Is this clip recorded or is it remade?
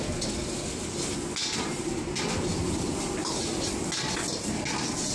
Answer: recorded